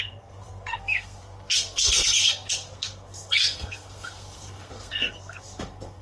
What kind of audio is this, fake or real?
fake